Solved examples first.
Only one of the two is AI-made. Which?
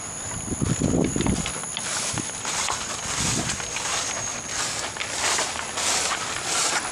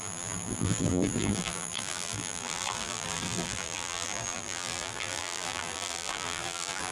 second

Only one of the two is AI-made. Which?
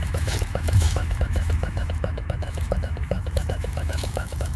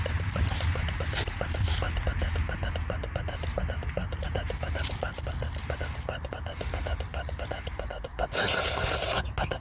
first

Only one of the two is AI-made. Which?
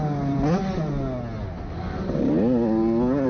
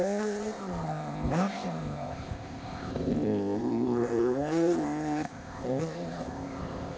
second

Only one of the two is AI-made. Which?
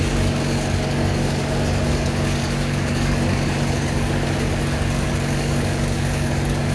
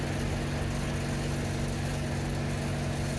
first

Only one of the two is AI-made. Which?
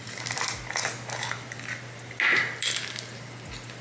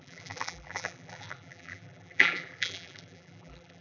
second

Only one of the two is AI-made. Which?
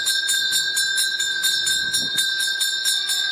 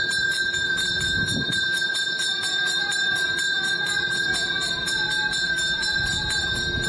second